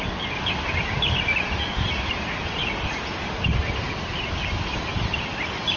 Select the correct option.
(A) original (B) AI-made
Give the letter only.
A